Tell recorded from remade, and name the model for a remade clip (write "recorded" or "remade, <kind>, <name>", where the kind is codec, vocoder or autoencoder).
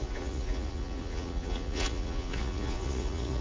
remade, vocoder, Vocos